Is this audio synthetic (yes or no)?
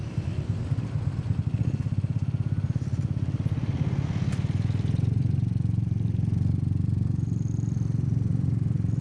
no